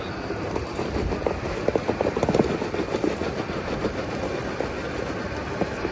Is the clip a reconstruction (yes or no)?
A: no